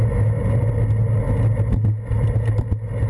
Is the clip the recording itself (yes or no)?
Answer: yes